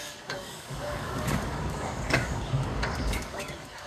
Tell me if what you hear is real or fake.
fake